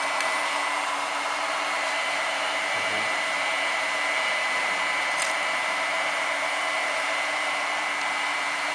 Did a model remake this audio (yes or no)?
yes